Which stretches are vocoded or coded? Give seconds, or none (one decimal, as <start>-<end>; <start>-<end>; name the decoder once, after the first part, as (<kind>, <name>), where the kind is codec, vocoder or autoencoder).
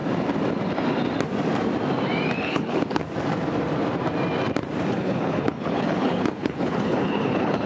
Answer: 2.4-3.0 (codec, HILCodec); 4.9-7.7